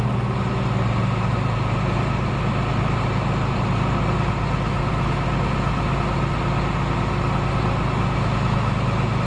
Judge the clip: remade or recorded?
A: recorded